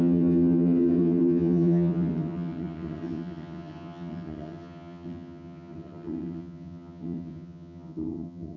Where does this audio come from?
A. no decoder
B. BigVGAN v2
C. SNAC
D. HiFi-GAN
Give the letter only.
D